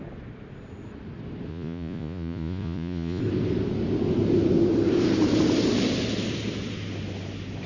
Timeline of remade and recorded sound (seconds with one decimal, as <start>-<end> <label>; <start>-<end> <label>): 0.0-1.5 recorded; 1.5-3.2 remade; 3.2-7.7 recorded